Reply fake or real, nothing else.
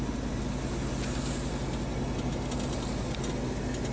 real